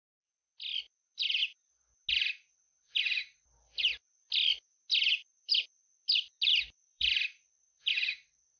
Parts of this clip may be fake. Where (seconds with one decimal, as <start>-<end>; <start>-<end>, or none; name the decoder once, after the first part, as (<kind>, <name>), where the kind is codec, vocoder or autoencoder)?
6.5-7.8 (vocoder, BigVGAN v2)